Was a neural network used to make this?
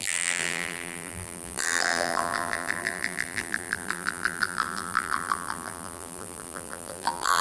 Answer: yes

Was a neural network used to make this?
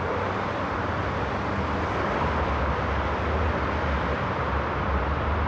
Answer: no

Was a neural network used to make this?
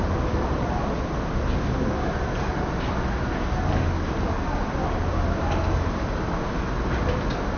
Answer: no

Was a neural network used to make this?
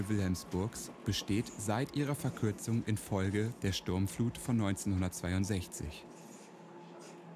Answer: no